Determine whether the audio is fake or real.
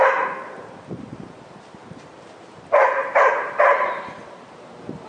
fake